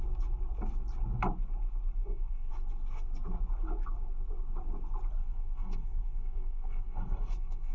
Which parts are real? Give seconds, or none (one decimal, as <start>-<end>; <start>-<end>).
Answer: 0.0-2.0; 2.5-5.2